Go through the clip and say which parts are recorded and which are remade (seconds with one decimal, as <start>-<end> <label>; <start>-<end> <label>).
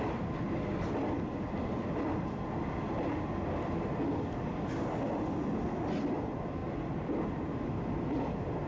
0.0-8.7 recorded